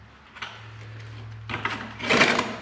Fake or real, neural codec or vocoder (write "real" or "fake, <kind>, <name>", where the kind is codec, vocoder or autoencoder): real